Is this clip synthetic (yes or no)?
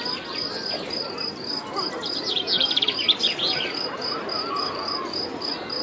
no